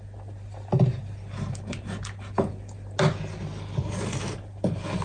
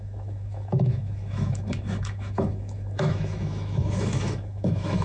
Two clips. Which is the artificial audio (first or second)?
second